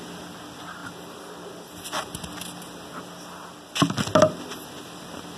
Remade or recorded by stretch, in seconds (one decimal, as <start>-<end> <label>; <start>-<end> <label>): 0.0-5.4 recorded